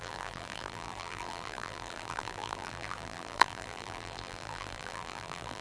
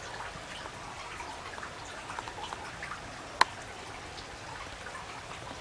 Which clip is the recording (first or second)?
second